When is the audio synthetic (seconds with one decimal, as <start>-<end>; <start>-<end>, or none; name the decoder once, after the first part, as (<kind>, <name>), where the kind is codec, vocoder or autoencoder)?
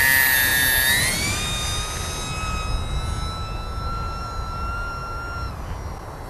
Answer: none